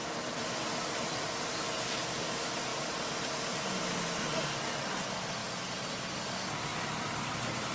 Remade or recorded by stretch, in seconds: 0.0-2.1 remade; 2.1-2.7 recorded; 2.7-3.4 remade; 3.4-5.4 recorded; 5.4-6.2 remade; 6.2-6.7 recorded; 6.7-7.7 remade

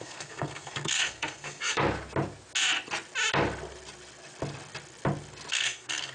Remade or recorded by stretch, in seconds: 0.0-1.8 remade; 1.8-5.5 recorded; 5.5-6.1 remade

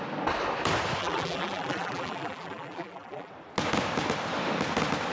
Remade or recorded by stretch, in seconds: 0.0-1.0 recorded; 1.0-3.3 remade; 3.3-5.1 recorded